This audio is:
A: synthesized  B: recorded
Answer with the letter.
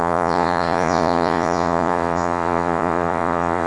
A